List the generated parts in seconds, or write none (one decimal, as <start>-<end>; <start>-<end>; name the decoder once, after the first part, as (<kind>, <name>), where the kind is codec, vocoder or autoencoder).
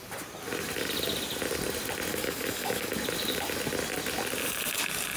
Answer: 2.1-2.9 (codec, DAC)